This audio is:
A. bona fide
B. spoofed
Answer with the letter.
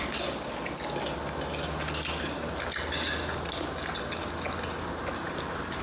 A